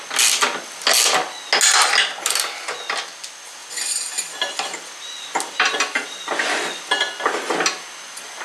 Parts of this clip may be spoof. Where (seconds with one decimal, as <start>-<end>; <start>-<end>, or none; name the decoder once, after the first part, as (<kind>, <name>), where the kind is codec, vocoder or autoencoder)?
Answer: none